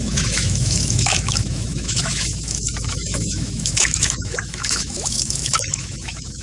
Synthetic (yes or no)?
yes